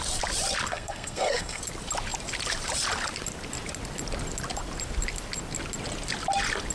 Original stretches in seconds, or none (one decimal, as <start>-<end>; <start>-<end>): 0.0-0.7; 1.6-6.7